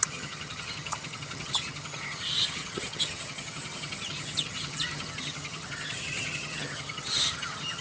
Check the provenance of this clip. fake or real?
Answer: fake